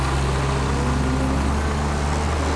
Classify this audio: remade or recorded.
recorded